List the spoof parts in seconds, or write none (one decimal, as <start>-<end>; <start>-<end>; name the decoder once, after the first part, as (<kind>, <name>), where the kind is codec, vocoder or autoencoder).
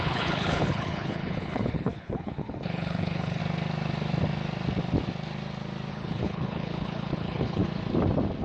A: 0.0-3.4 (codec, HILCodec); 5.9-7.6